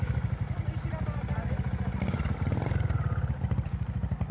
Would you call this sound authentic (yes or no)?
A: yes